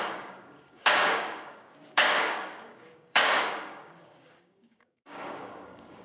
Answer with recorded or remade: remade